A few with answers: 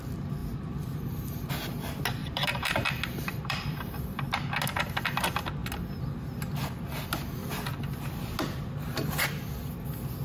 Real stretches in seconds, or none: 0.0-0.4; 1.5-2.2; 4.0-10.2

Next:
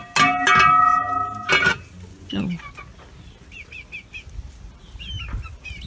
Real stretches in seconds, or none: 0.0-2.1; 2.7-5.9

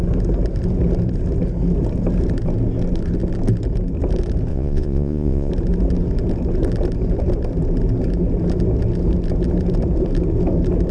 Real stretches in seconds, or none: 0.0-4.5; 5.5-10.9

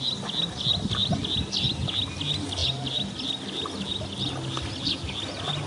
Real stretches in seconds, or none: 0.0-5.7